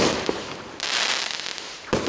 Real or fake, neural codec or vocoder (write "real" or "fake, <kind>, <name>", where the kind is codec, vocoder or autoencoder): fake, vocoder, BigVGAN v2